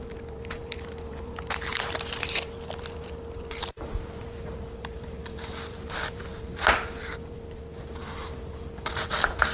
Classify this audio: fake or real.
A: fake